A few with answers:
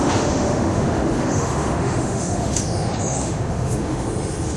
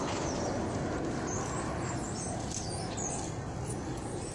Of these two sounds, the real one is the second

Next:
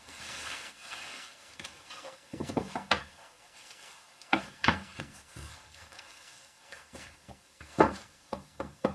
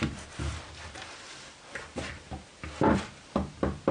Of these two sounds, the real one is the second